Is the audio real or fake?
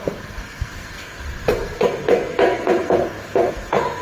fake